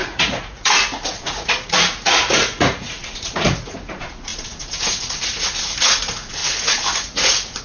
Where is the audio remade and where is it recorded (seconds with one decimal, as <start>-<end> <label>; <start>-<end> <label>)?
0.0-7.6 remade